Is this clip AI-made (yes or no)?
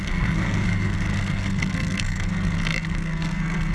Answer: yes